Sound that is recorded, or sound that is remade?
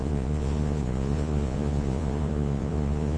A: remade